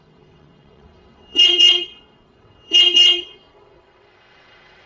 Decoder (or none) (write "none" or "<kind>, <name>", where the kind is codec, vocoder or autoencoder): vocoder, WaveNeXt